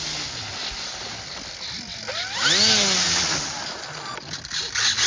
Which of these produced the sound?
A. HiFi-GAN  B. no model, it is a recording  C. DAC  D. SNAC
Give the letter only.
B